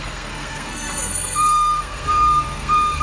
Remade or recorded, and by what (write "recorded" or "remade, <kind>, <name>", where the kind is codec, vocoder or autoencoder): remade, codec, SNAC